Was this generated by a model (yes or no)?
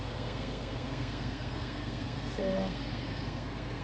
yes